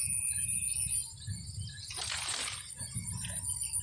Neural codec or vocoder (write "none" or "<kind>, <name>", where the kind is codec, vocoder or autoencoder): none